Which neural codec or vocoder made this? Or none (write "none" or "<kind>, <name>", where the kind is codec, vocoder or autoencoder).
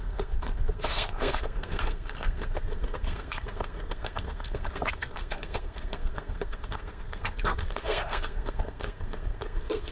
codec, SNAC